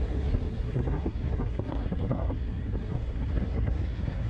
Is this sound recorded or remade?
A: remade